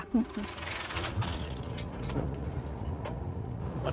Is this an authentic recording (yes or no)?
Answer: no